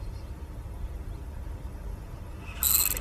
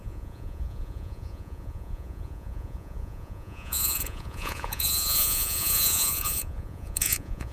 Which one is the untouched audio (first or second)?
first